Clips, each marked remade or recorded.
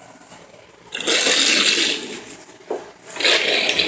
recorded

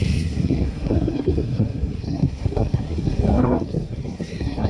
remade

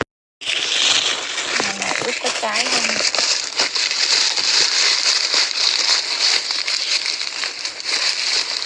recorded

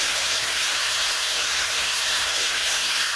remade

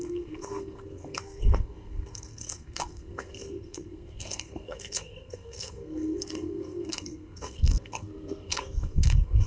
remade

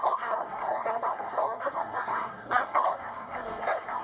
remade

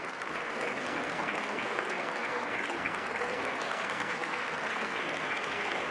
remade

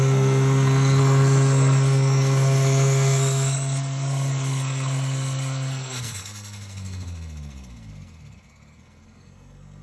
remade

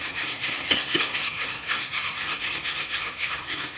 remade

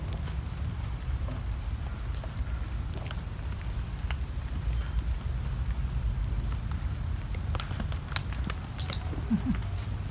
recorded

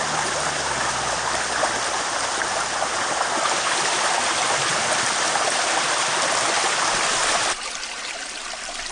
recorded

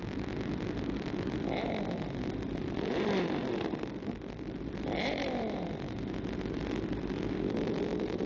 recorded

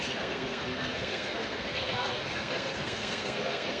remade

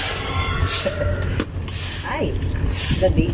recorded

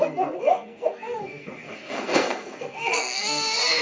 remade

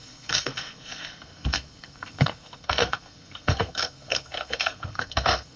remade